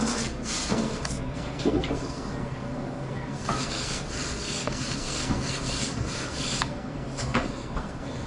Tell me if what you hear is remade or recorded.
remade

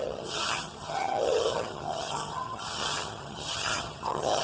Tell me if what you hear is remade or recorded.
remade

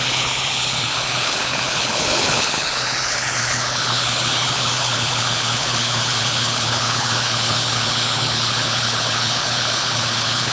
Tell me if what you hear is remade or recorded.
remade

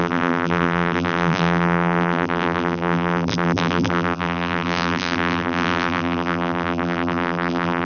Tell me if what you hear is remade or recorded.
remade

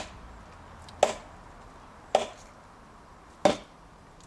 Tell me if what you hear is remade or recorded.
recorded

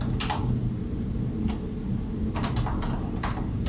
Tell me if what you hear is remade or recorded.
recorded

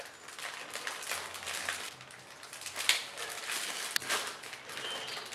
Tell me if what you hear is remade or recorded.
recorded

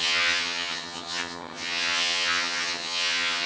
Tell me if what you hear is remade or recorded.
remade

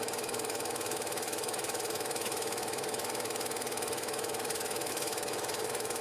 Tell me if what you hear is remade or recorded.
remade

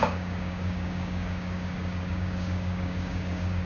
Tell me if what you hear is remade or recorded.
remade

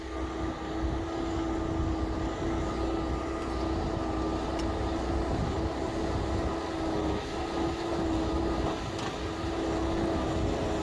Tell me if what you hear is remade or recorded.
recorded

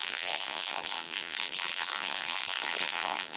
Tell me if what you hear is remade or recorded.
remade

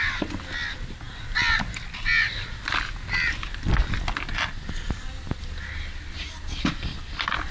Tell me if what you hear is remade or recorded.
recorded